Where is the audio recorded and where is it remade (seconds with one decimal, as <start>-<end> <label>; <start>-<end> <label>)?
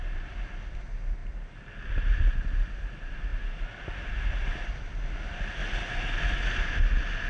0.0-7.3 recorded